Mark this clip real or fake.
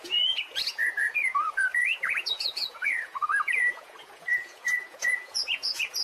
fake